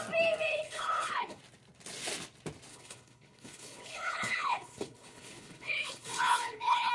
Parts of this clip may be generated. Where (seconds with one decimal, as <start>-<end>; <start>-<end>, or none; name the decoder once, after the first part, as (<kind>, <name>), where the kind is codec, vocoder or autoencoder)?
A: 0.5-1.4 (codec, HILCodec); 2.7-6.9